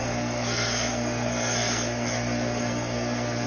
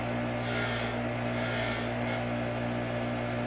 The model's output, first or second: first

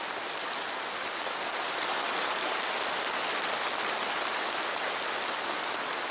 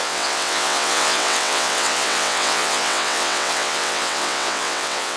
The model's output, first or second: second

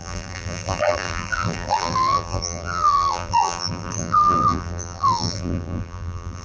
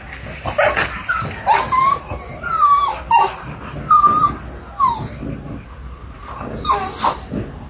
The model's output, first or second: first